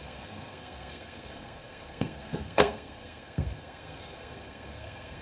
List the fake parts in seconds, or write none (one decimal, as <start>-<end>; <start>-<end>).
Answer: 0.0-5.2